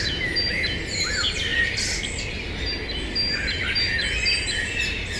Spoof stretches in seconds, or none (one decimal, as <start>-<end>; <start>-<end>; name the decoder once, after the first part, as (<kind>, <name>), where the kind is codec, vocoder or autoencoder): none